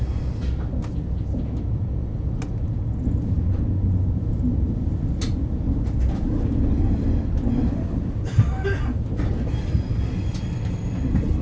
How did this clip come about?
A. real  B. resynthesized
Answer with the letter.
A